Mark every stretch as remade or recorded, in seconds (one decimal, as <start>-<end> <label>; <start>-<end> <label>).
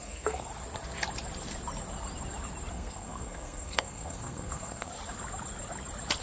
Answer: 0.0-0.5 remade; 0.5-2.7 recorded; 2.7-4.9 remade; 4.9-6.2 recorded